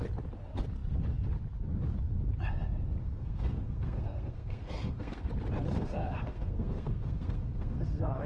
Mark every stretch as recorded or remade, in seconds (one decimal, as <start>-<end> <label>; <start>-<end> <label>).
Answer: 0.0-3.0 recorded; 3.0-5.3 remade; 5.3-5.7 recorded; 5.7-8.3 remade